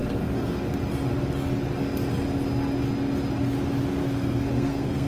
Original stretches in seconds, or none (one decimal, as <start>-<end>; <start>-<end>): 0.6-4.0